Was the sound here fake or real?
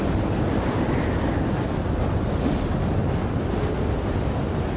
real